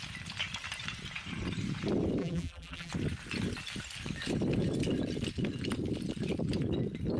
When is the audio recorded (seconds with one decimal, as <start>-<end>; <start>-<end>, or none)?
0.0-2.2; 2.9-7.2